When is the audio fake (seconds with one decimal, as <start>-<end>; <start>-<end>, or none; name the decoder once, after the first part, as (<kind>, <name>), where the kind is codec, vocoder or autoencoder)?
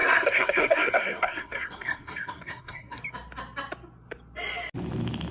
0.0-3.0 (codec, SNAC)